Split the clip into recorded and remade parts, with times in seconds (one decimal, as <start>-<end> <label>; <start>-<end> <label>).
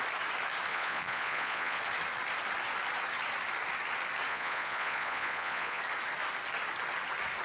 0.0-0.7 recorded; 0.7-1.8 remade; 1.8-4.3 recorded; 4.3-5.8 remade; 5.8-7.4 recorded